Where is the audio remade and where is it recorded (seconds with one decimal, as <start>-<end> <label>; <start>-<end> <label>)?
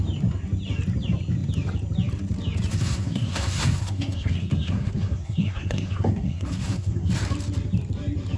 0.0-2.7 recorded; 2.7-7.1 remade; 7.1-8.4 recorded